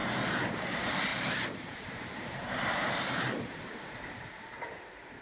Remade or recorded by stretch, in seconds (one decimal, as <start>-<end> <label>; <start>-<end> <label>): 0.0-1.1 recorded; 1.1-4.2 remade; 4.2-5.2 recorded